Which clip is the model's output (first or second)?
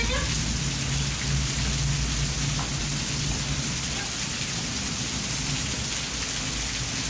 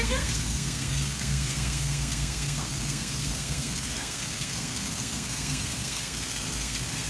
second